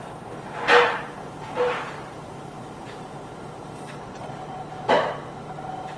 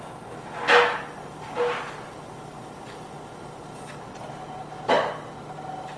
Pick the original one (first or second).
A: second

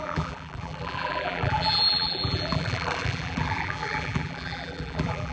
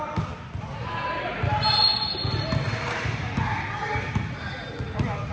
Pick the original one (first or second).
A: second